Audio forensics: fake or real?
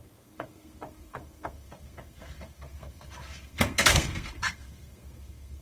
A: fake